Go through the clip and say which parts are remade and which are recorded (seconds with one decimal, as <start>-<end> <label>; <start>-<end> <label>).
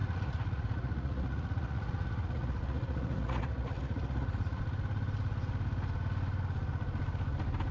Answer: 0.0-4.6 remade; 4.6-7.7 recorded